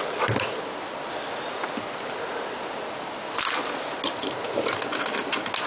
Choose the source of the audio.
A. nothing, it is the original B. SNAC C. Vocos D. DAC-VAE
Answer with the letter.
A